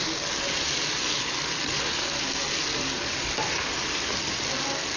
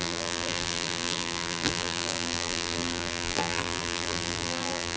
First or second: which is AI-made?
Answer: second